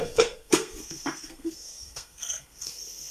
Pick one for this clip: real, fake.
fake